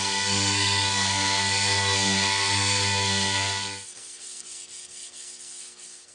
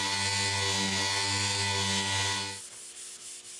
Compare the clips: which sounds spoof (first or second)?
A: first